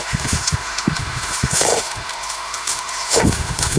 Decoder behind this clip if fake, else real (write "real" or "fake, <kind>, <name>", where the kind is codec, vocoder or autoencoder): fake, autoencoder, DAC-VAE